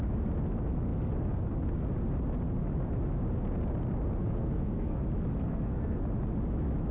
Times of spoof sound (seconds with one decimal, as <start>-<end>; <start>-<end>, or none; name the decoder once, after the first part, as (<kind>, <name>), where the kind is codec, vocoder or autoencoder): 4.2-5.0 (codec, SNAC); 5.4-6.0